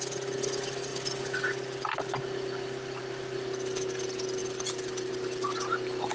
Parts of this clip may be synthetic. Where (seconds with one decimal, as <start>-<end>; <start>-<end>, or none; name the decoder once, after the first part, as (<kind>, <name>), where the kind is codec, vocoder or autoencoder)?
none